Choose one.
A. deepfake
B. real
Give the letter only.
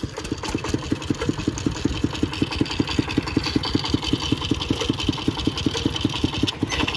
B